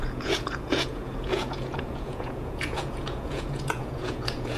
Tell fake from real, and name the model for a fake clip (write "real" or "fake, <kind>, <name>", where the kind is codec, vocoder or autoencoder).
fake, vocoder, Vocos